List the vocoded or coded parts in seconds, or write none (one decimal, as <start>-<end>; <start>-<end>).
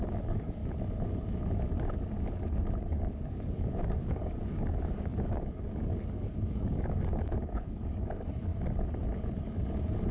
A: 0.0-0.6; 2.9-8.5